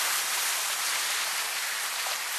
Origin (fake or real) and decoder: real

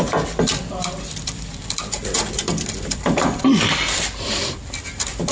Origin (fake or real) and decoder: fake, vocoder, BigVGAN v2